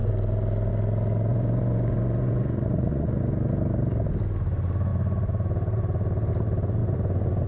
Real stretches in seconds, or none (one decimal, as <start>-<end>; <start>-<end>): 0.0-1.3; 3.2-6.8